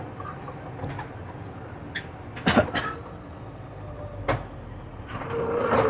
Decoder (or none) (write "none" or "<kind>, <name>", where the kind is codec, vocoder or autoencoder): none